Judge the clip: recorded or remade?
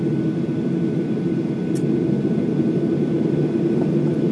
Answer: recorded